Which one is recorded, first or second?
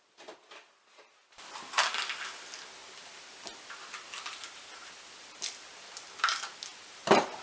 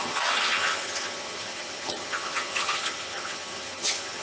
first